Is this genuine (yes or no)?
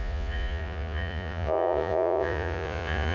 no